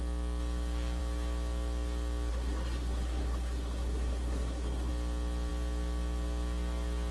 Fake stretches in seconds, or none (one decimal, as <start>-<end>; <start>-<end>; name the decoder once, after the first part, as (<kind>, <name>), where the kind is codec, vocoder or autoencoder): 2.3-4.9 (codec, SNAC)